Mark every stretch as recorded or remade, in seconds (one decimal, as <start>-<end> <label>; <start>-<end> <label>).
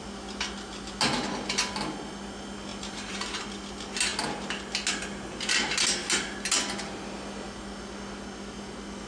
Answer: 0.0-2.7 recorded; 2.7-3.4 remade; 3.4-9.1 recorded